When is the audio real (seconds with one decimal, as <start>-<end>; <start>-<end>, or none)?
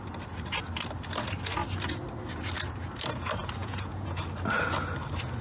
0.0-3.6; 4.2-5.4